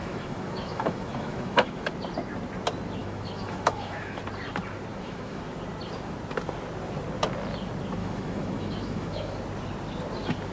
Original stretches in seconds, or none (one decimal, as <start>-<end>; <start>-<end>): 1.9-3.0; 4.2-4.9; 5.4-8.0; 9.4-10.5